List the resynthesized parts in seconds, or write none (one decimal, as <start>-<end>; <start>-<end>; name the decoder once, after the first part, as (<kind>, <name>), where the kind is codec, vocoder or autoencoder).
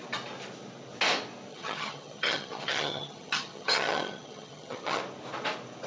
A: 1.5-5.0 (vocoder, HiFi-GAN)